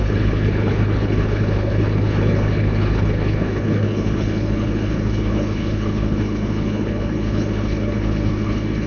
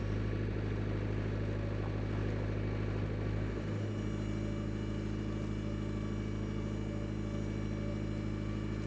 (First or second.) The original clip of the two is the second